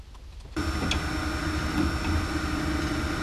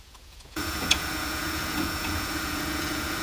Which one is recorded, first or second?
first